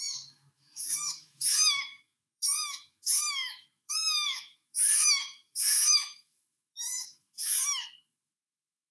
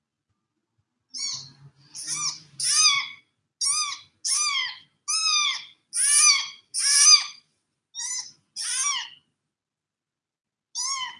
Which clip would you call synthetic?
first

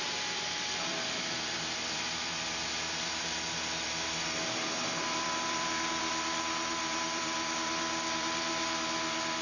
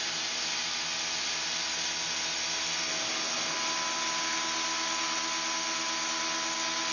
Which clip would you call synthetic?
first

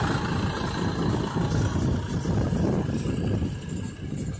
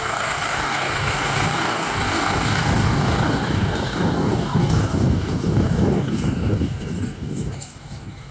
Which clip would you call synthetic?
second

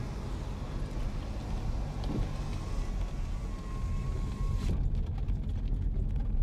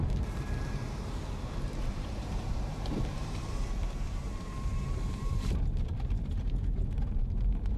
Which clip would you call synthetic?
second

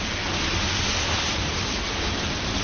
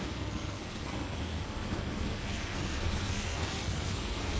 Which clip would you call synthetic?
second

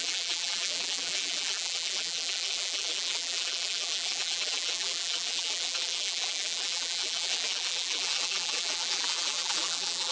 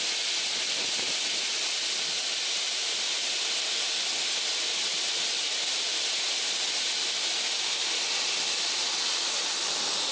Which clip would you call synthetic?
first